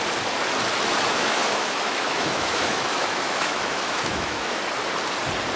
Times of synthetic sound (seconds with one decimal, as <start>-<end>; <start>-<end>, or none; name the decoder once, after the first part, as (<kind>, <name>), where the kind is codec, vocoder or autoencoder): 1.2-4.6 (autoencoder, DAC-VAE)